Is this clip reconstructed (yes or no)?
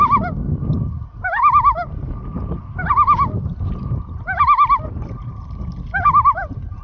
no